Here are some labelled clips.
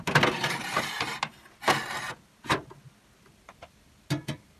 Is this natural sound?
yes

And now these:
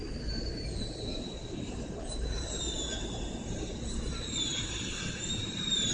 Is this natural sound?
no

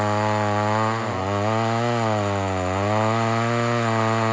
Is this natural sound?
yes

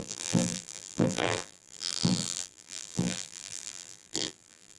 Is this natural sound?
no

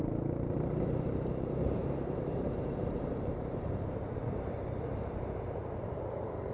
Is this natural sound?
no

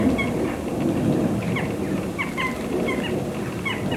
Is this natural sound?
yes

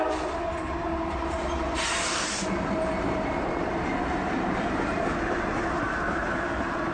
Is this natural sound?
no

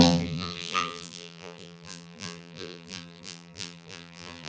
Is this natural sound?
no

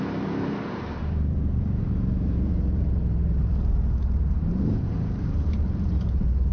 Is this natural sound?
no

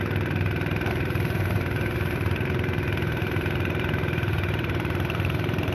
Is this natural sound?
no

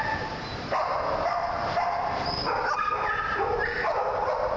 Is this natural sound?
no